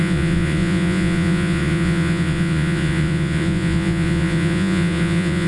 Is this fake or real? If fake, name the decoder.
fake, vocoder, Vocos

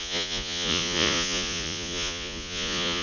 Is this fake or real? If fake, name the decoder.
fake, vocoder, Vocos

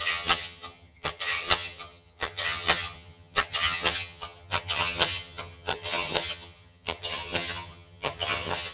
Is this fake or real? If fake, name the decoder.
fake, vocoder, HiFi-GAN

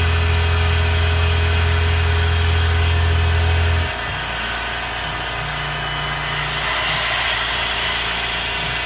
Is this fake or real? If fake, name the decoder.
real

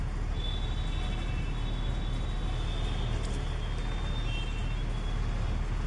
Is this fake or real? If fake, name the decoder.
real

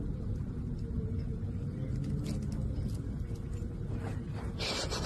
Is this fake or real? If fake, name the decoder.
real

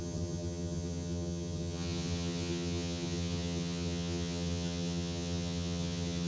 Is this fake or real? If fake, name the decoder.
fake, vocoder, HiFi-GAN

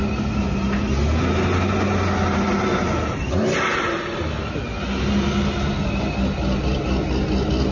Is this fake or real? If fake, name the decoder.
real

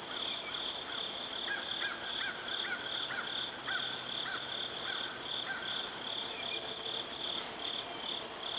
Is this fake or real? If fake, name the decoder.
real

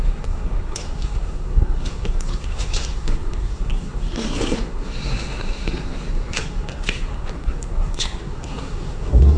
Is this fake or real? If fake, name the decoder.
fake, codec, SNAC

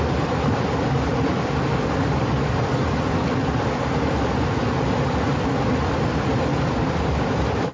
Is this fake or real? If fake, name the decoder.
real